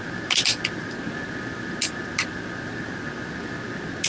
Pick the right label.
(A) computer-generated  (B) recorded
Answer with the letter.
B